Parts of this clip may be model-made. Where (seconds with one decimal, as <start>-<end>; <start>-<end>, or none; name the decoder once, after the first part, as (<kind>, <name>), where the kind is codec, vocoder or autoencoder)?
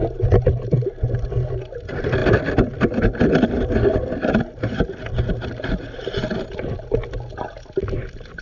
none